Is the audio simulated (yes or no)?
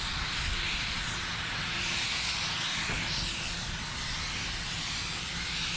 no